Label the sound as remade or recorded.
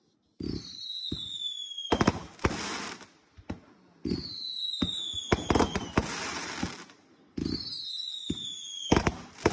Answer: recorded